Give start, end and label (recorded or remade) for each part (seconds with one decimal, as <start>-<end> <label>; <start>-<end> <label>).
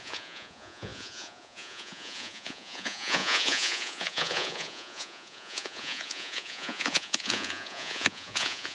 0.0-8.7 remade